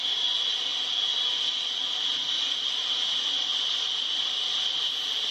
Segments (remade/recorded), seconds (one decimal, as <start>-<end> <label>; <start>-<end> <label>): 0.0-5.3 recorded